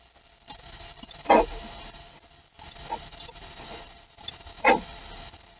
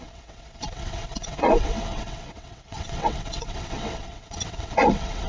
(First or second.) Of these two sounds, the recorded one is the first